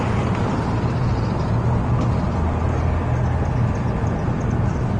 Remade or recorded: recorded